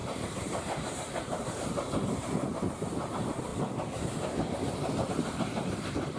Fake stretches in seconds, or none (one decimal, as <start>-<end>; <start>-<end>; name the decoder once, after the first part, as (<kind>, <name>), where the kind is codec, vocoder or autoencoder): 0.0-3.5 (vocoder, BigVGAN v2); 5.1-6.2